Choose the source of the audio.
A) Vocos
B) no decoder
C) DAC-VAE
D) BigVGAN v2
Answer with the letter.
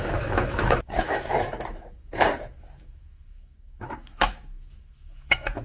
C